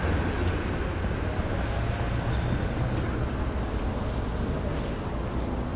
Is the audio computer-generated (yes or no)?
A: no